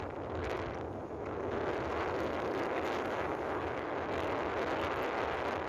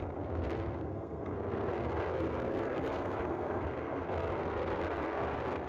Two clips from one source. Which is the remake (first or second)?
second